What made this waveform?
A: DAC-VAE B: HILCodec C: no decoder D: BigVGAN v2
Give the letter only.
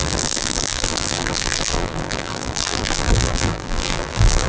D